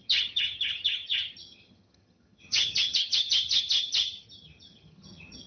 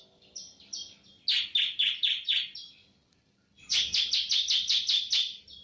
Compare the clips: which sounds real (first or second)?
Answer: second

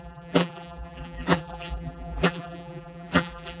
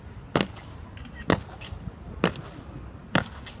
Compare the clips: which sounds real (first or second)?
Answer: second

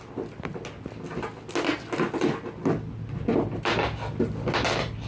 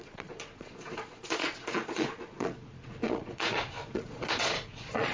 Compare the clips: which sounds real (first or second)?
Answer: first